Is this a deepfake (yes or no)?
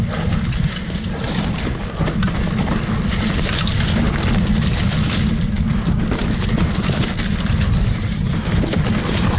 no